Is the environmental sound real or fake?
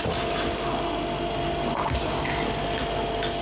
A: real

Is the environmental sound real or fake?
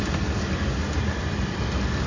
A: real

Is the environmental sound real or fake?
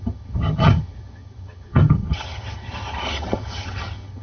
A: fake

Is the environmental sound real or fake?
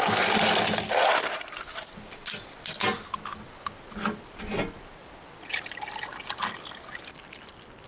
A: real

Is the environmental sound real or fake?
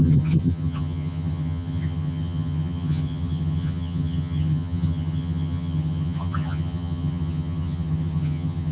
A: fake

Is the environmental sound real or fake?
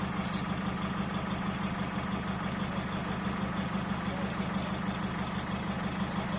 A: real